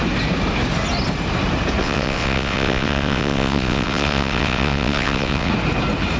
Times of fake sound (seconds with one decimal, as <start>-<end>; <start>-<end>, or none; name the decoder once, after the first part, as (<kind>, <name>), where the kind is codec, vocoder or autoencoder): 1.8-5.5 (vocoder, WaveNeXt)